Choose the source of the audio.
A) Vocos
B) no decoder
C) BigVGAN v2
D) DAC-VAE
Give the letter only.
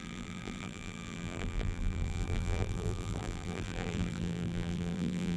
C